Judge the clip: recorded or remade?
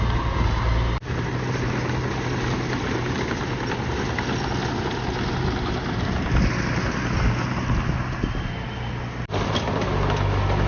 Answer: recorded